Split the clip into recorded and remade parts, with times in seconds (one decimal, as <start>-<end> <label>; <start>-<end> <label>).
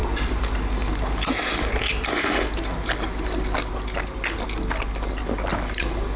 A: 0.0-6.2 recorded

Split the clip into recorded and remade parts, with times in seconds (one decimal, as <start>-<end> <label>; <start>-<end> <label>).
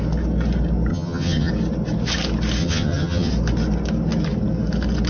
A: 0.0-0.9 recorded; 0.9-1.5 remade; 1.5-2.6 recorded; 2.6-3.3 remade; 3.3-5.1 recorded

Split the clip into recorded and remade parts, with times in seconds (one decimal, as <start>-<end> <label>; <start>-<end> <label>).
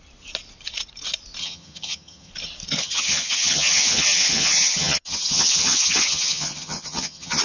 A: 0.0-1.4 recorded; 1.4-2.3 remade; 2.3-2.8 recorded; 2.8-7.4 remade